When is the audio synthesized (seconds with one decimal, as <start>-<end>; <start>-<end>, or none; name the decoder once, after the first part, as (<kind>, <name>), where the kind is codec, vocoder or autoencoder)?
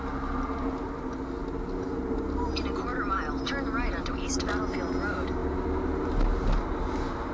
none